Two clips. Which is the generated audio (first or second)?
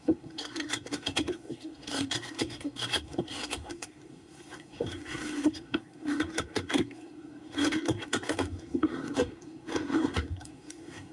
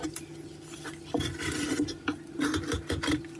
first